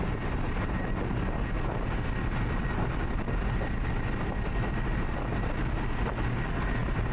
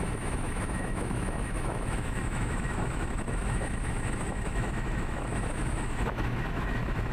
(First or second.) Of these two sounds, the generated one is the second